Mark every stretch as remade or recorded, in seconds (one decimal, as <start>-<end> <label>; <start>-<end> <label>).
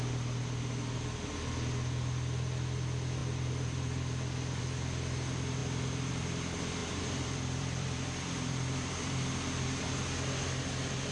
0.0-3.2 recorded; 3.2-4.6 remade; 4.6-6.8 recorded; 6.8-9.9 remade; 9.9-11.1 recorded